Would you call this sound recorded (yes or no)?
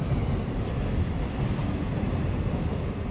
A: yes